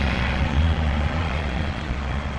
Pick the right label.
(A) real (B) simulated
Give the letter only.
B